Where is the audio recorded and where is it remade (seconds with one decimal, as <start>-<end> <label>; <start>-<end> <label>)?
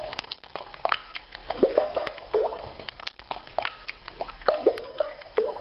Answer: 0.0-5.6 remade